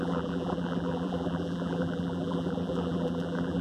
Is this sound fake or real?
fake